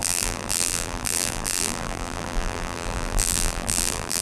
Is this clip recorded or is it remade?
remade